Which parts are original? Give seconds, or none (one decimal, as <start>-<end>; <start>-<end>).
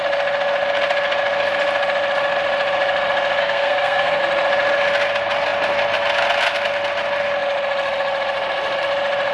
0.0-3.4; 4.2-9.3